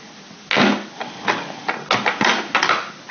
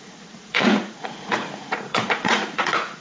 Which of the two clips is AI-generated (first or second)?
second